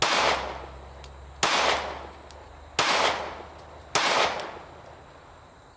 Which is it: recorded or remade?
recorded